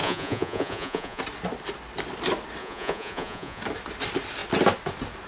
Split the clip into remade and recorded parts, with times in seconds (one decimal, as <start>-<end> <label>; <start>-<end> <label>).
0.0-1.2 remade; 1.2-2.6 recorded; 2.6-3.6 remade; 3.6-5.3 recorded

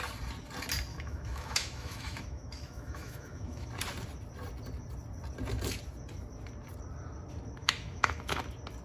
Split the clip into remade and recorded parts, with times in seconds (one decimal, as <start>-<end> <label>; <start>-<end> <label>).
0.0-0.9 recorded; 0.9-3.7 remade; 3.7-7.6 recorded; 7.6-8.4 remade; 8.4-8.8 recorded